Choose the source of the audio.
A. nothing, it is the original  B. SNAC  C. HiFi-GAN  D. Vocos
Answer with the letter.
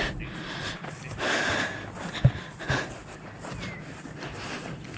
A